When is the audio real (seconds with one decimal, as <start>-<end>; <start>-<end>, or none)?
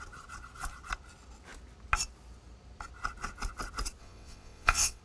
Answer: 0.0-4.0